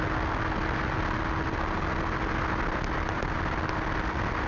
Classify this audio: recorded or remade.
recorded